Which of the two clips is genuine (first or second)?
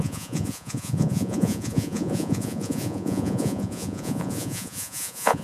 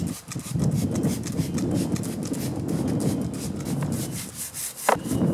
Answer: second